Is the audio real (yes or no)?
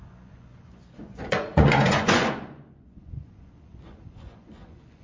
no